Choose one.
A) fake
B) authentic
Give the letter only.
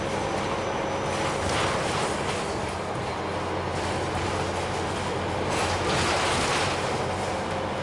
B